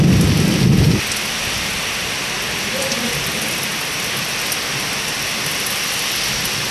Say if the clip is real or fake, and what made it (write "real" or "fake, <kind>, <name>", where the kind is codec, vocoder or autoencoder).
real